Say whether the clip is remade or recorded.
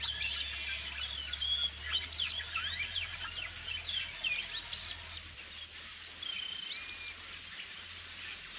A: recorded